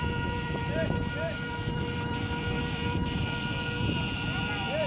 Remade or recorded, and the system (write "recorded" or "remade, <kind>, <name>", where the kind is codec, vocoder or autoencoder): remade, vocoder, BigVGAN v2